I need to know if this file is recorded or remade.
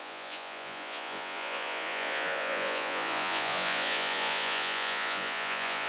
remade